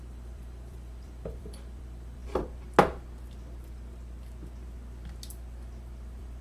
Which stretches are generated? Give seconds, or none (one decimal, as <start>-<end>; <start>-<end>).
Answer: 0.0-2.2; 6.0-6.4